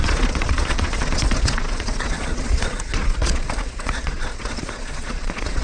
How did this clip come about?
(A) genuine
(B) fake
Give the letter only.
B